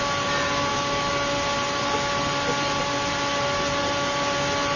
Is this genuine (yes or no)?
yes